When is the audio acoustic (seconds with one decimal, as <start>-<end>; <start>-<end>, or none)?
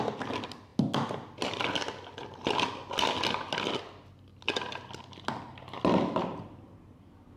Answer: 0.0-7.4